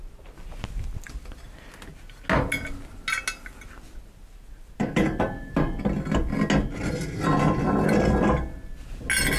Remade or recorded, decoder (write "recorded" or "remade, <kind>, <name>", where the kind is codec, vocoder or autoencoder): recorded